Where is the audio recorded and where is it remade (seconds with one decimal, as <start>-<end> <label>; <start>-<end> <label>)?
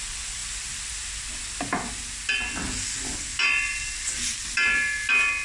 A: 0.0-5.4 recorded